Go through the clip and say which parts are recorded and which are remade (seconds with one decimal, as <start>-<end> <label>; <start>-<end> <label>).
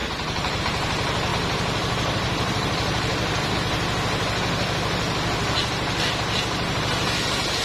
0.0-0.6 remade; 0.6-1.3 recorded; 1.3-3.5 remade; 3.5-7.6 recorded